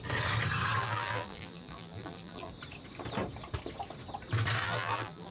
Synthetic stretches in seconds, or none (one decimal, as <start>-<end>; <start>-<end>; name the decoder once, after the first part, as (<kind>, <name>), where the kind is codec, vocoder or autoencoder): 0.8-2.5 (vocoder, BigVGAN v2); 4.6-5.3

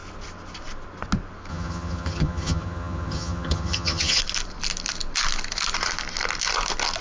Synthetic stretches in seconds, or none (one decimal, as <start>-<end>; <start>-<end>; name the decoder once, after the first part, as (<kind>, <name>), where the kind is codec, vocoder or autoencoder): 1.5-4.2 (vocoder, HiFi-GAN)